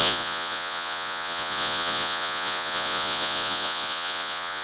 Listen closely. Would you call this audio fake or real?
fake